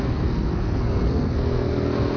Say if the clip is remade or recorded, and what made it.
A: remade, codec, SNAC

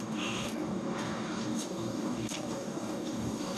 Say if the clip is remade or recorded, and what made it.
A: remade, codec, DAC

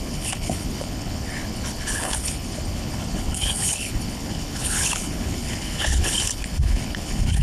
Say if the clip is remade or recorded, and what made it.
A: remade, codec, HILCodec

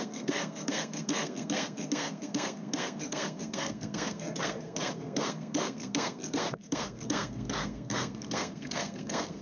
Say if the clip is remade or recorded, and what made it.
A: remade, codec, SNAC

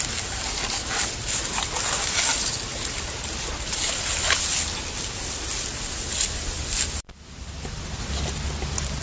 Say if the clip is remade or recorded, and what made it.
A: recorded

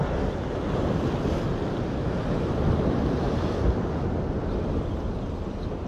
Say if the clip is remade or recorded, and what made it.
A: recorded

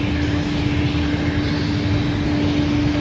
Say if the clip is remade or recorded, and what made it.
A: recorded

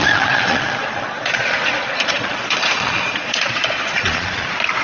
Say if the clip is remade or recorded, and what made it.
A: remade, vocoder, Vocos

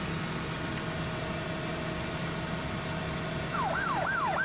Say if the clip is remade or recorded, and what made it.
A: recorded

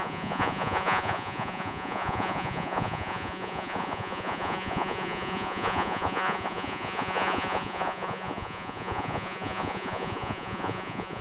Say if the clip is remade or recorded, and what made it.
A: remade, vocoder, Vocos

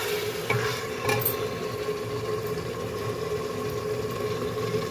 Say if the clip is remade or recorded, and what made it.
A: recorded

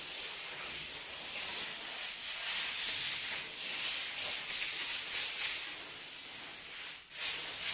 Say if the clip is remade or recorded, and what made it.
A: recorded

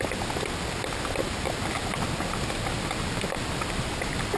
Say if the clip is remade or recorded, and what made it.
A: recorded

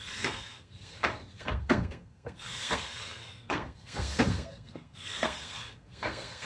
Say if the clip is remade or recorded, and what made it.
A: remade, codec, SNAC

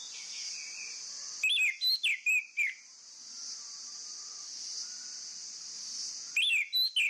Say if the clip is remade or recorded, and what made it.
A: recorded